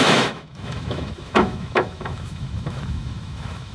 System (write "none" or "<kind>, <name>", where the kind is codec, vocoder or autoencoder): autoencoder, DAC-VAE